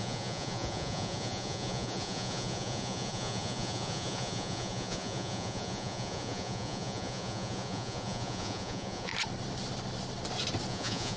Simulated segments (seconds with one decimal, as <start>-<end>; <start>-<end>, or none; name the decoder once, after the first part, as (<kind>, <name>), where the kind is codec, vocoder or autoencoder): 0.0-9.1 (vocoder, Vocos); 10.7-11.2